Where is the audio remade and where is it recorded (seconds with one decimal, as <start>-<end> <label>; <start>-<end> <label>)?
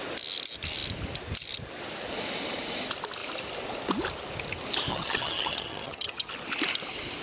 0.0-4.9 recorded; 4.9-6.3 remade; 6.3-7.2 recorded